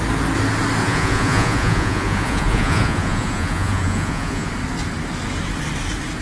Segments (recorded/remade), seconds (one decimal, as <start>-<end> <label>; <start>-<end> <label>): 0.0-0.8 recorded; 0.8-4.5 remade; 4.5-6.2 recorded